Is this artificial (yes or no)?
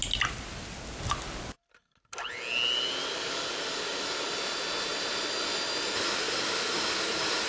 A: no